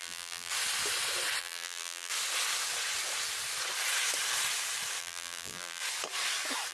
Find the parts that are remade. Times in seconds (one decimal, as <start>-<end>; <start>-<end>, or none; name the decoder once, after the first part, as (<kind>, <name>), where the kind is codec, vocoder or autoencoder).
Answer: 0.0-0.5 (vocoder, BigVGAN v2); 1.4-2.1; 5.0-5.8